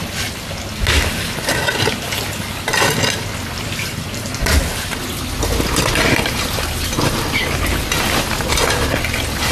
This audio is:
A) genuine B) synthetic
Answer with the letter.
A